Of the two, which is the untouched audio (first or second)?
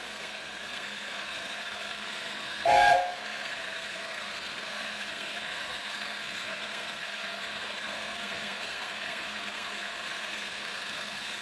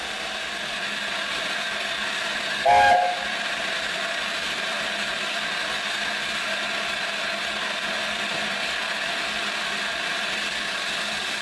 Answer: second